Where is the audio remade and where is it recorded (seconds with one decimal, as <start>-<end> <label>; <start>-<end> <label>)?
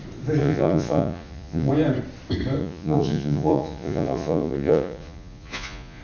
0.0-0.4 recorded; 0.4-1.7 remade; 1.7-2.6 recorded; 2.6-6.0 remade